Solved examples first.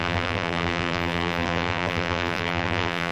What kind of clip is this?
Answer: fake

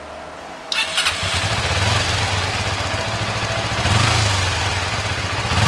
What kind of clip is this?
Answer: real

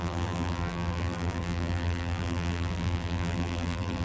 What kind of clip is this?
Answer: fake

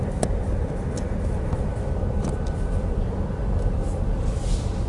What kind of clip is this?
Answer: fake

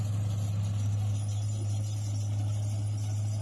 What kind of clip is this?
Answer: real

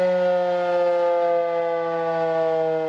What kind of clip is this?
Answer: real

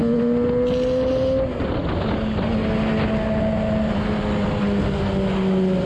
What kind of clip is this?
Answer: real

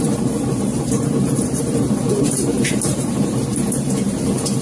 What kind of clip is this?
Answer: fake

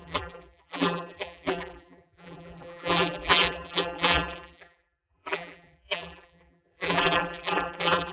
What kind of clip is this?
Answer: fake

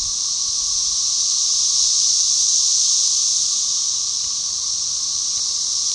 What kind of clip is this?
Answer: fake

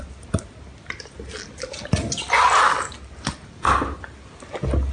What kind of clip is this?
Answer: real